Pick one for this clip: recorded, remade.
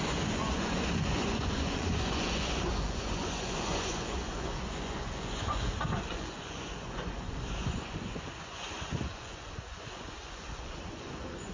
remade